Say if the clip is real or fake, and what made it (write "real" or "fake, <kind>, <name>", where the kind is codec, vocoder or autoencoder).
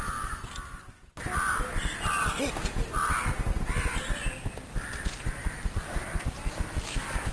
real